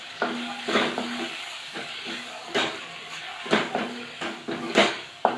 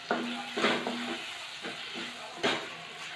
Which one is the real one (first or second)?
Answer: second